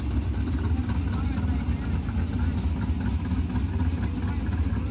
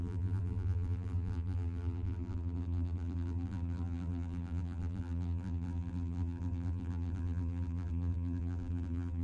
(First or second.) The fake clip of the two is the second